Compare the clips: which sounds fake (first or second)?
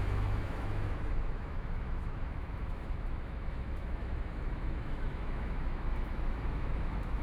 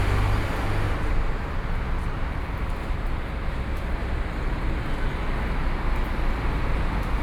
first